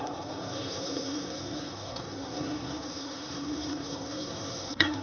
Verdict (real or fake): fake